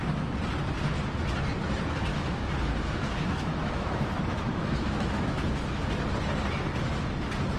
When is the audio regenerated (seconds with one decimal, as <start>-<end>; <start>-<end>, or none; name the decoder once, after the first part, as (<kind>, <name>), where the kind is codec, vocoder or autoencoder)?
2.1-5.8 (autoencoder, DAC-VAE)

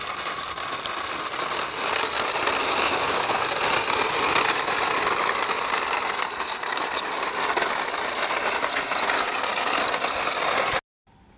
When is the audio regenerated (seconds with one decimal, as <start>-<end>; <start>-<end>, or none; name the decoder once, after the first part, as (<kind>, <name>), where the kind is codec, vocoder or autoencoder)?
2.6-3.4 (codec, DAC)

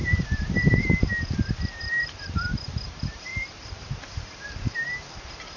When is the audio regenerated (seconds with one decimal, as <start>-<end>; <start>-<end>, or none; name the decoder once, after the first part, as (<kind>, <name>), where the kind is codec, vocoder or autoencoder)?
0.0-1.1 (vocoder, BigVGAN v2); 1.8-5.6

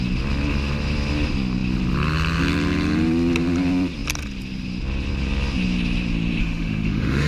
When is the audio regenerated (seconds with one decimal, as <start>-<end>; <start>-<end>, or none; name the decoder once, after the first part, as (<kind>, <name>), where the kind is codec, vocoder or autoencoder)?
6.4-7.3 (autoencoder, DAC-VAE)

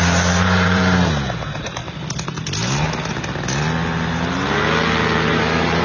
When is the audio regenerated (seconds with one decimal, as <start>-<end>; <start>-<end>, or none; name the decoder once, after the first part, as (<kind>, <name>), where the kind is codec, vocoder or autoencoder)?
0.0-1.8 (vocoder, BigVGAN v2); 5.3-5.8

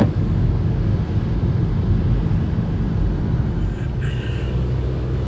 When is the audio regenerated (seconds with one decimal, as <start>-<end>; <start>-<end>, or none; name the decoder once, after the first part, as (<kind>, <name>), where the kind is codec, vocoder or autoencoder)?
0.0-0.9 (codec, DAC); 4.1-5.3

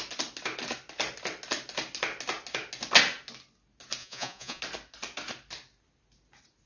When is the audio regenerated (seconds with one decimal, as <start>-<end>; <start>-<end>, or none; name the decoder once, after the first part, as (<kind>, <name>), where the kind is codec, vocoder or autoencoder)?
4.0-4.6 (vocoder, Vocos)